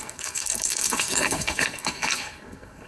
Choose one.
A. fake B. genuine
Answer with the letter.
A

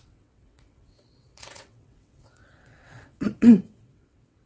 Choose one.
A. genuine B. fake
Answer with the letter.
B